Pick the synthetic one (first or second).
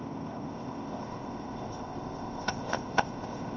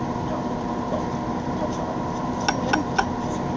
first